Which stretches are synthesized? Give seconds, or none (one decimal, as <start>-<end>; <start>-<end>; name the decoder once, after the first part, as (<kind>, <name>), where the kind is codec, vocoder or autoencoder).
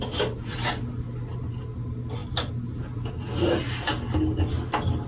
none